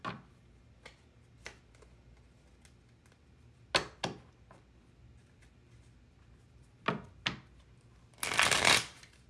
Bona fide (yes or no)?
yes